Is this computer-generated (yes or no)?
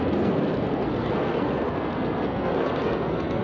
yes